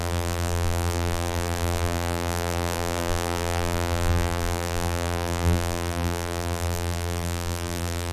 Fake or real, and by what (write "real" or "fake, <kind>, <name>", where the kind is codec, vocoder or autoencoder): fake, vocoder, BigVGAN v2